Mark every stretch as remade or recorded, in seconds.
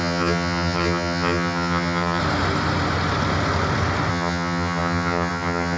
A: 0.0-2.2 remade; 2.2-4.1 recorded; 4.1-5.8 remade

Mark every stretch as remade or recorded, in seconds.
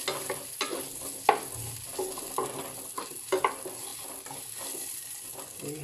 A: 0.0-1.9 recorded; 1.9-2.6 remade; 2.6-3.9 recorded; 3.9-5.3 remade; 5.3-5.8 recorded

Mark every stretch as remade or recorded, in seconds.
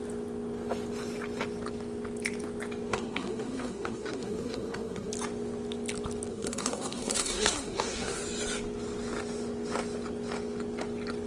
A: 0.0-2.9 recorded; 2.9-5.1 remade; 5.1-6.3 recorded; 6.3-8.2 remade; 8.2-11.3 recorded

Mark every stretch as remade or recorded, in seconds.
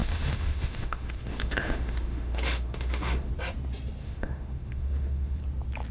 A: 0.0-3.3 remade; 3.3-4.0 recorded; 4.0-5.4 remade; 5.4-5.9 recorded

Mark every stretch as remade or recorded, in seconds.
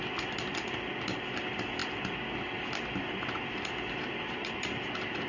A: 0.0-5.3 recorded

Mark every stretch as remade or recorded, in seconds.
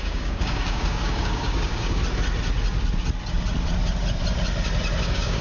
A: 0.0-2.0 remade; 2.0-5.0 recorded; 5.0-5.4 remade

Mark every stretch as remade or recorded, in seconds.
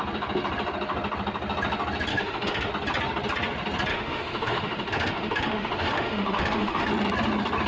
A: 0.0-2.1 recorded; 2.1-2.7 remade; 2.7-3.9 recorded; 3.9-6.9 remade; 6.9-7.7 recorded